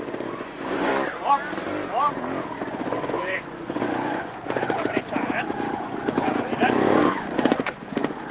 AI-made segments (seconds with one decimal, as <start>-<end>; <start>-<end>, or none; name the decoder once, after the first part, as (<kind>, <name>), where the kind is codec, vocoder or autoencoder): 0.0-0.9 (vocoder, Vocos); 2.6-8.3